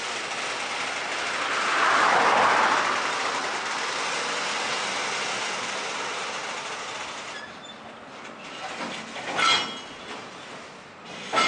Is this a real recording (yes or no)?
yes